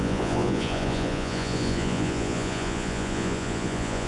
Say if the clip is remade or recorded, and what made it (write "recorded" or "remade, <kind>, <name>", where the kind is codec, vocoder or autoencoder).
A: remade, vocoder, Vocos